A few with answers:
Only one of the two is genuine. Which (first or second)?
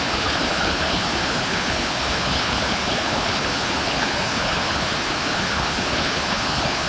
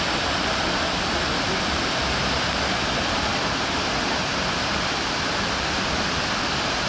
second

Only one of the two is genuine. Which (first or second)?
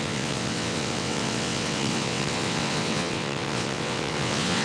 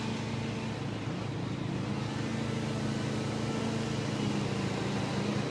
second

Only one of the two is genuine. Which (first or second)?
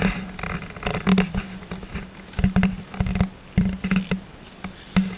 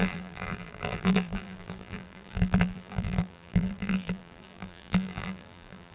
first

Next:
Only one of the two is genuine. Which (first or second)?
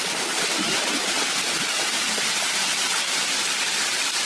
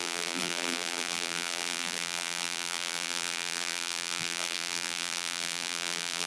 first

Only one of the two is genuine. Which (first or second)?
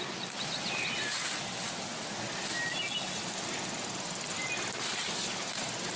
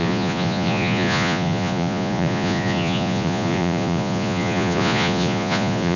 first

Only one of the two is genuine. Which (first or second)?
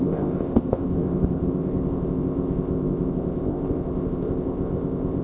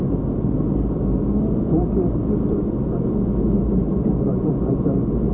second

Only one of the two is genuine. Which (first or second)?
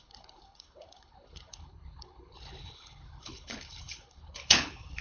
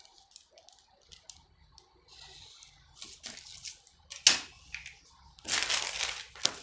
second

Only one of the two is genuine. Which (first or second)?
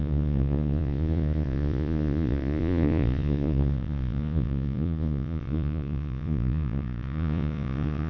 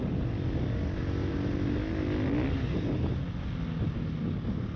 second